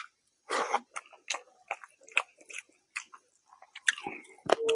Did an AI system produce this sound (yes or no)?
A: no